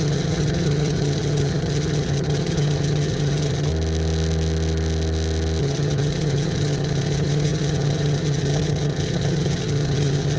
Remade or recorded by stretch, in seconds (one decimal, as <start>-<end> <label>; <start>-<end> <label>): 0.0-3.7 remade; 3.7-5.6 recorded; 5.6-10.4 remade